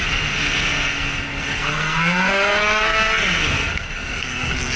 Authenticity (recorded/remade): remade